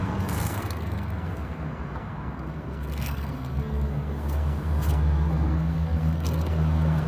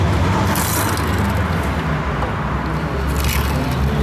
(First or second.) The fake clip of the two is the first